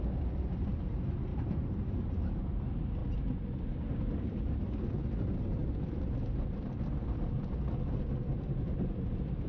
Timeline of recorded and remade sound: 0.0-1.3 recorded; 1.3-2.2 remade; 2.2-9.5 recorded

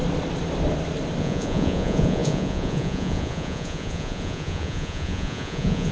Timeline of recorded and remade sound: 0.0-1.2 recorded; 1.2-5.9 remade

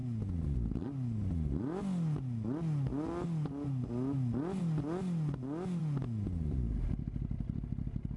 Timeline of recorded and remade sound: 0.0-8.2 recorded